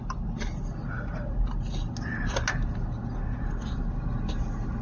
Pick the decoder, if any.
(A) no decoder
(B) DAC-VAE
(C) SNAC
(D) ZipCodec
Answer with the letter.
A